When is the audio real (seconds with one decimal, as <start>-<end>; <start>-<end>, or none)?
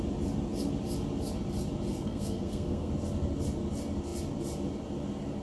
0.0-1.9; 2.9-5.4